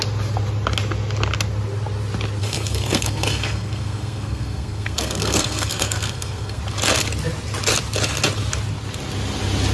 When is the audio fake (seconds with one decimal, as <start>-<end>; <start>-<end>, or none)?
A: 2.4-6.6